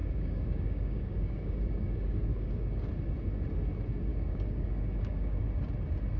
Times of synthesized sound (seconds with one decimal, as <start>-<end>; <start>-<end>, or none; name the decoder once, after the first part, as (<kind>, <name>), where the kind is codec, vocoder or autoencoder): 0.0-2.9 (codec, DAC); 4.1-5.4